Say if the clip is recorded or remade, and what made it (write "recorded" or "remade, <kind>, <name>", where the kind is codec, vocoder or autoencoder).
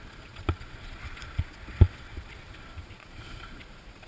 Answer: remade, vocoder, Vocos